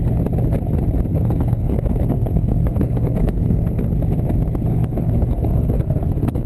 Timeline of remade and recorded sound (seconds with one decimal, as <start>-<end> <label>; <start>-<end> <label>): 0.0-1.1 recorded; 1.1-3.9 remade; 3.9-4.7 recorded; 4.7-6.5 remade